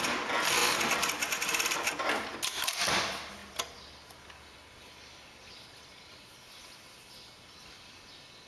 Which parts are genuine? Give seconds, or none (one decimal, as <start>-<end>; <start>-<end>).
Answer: 0.0-8.5